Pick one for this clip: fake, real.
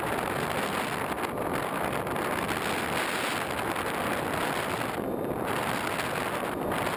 real